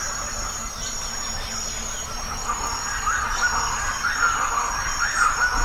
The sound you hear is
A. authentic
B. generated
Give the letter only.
A